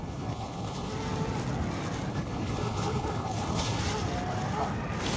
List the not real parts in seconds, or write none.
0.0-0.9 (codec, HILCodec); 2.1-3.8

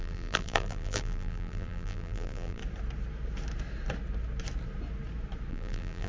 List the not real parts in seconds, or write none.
0.0-2.6 (vocoder, BigVGAN v2); 5.5-6.1

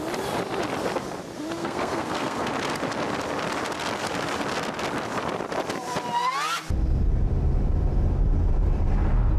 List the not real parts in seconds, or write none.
1.6-2.5 (codec, SNAC)

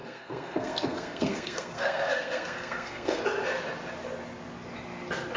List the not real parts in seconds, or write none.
0.0-3.2 (codec, SNAC)

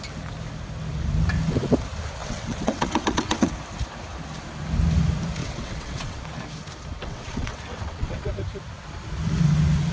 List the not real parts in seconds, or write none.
2.2-3.5 (vocoder, WaveNeXt); 5.4-6.2; 7.0-8.3